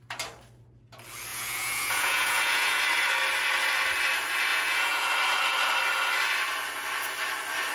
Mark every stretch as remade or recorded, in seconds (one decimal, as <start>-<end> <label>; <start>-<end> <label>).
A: 0.0-1.3 recorded; 1.3-2.8 remade; 2.8-4.5 recorded; 4.5-5.1 remade; 5.1-7.7 recorded